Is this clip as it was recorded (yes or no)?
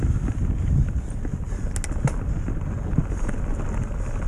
yes